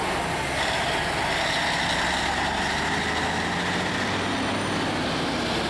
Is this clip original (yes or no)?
yes